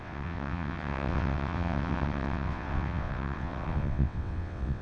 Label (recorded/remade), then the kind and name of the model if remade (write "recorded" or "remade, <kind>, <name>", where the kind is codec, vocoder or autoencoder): remade, vocoder, WaveNeXt